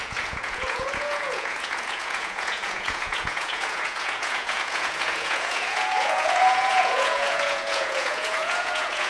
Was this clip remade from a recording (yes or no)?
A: yes